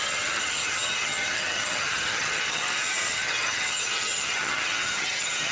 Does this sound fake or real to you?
fake